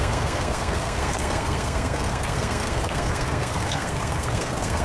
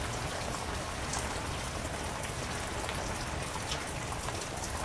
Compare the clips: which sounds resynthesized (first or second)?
first